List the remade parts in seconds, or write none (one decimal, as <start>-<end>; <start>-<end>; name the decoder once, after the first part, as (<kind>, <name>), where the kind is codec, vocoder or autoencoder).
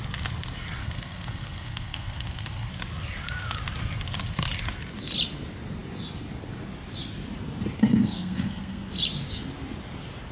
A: 0.8-2.7 (codec, SNAC); 7.9-8.9